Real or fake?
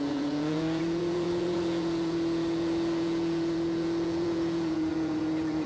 fake